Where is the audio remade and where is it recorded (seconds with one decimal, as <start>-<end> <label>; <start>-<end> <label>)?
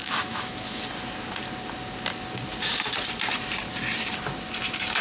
0.0-0.8 remade; 0.8-5.0 recorded